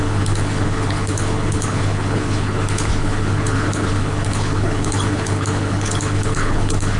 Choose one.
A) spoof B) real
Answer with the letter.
A